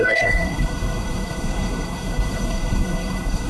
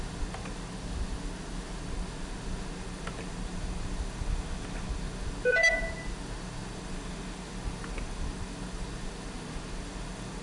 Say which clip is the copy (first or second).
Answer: first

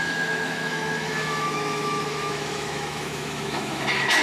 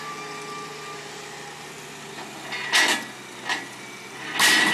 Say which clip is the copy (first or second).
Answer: first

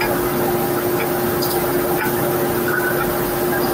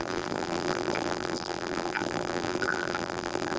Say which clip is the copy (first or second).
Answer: second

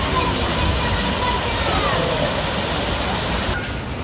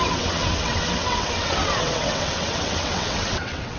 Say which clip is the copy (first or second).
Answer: second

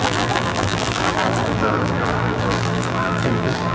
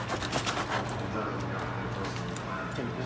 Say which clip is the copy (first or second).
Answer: first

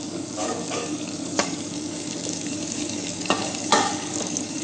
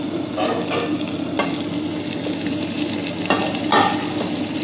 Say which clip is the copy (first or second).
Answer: first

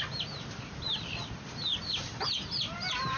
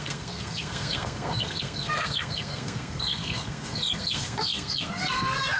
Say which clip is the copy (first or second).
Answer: second